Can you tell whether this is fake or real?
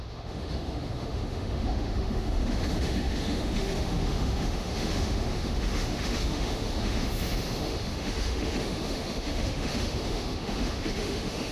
fake